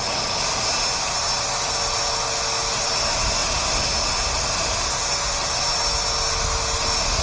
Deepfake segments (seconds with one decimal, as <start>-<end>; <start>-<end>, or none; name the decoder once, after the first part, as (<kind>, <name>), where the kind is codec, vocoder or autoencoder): none